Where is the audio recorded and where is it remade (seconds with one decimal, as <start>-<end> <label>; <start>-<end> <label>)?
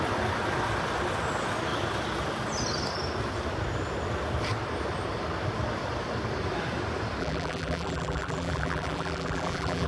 0.0-7.2 recorded; 7.2-9.9 remade